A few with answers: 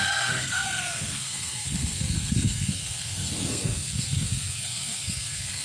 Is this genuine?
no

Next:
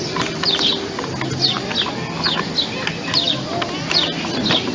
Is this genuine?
yes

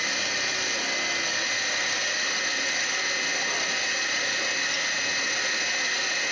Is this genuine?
yes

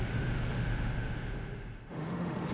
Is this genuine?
no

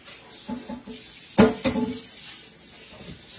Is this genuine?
yes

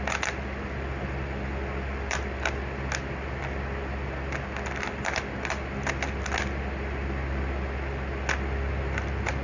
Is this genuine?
yes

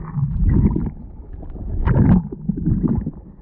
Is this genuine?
yes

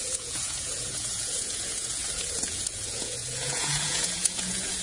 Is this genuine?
no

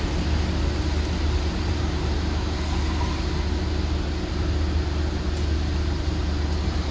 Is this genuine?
yes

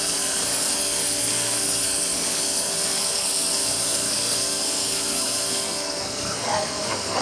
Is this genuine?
no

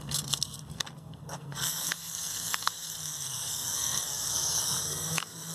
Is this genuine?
no